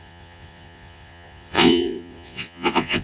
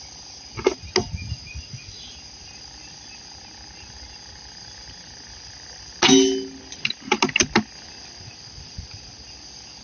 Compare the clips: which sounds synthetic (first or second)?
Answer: first